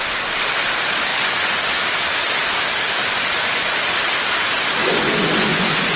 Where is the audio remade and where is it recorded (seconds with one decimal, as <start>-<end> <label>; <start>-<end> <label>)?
0.0-1.1 recorded; 1.1-1.8 remade; 1.8-3.0 recorded; 3.0-3.7 remade; 3.7-4.8 recorded; 4.8-6.0 remade